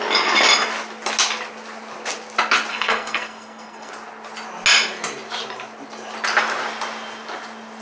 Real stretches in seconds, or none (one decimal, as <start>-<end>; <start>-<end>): 0.0-2.7; 3.9-7.8